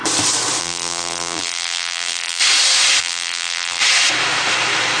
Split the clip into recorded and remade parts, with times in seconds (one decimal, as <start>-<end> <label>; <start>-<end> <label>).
0.0-0.6 recorded; 0.6-2.4 remade; 2.4-3.0 recorded; 3.0-3.8 remade; 3.8-5.0 recorded